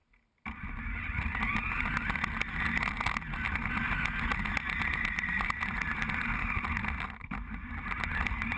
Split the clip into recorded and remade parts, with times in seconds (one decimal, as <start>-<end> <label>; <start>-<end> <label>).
0.0-8.6 recorded